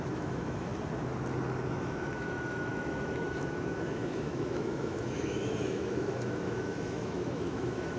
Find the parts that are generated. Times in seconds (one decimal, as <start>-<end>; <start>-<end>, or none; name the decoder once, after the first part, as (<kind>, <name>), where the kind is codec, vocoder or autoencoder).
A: 0.0-0.7 (autoencoder, DAC-VAE); 1.7-8.0